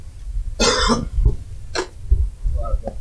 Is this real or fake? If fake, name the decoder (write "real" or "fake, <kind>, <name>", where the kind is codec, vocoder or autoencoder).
real